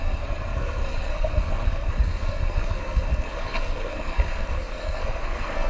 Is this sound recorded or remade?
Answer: remade